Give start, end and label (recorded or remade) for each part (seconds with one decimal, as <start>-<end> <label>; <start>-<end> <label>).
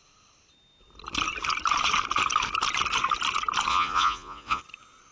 0.0-3.7 recorded; 3.7-4.6 remade; 4.6-5.1 recorded